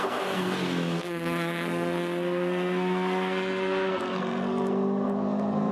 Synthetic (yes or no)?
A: yes